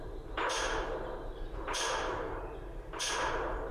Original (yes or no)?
no